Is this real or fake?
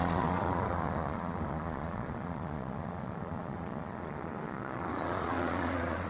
fake